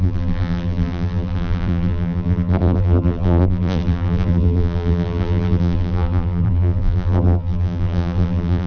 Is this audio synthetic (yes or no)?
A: yes